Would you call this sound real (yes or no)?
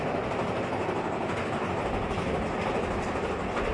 yes